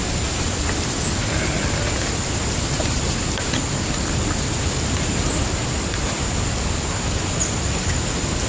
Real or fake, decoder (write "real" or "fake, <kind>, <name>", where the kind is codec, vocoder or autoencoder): real